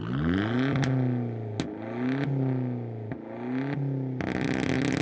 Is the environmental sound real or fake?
real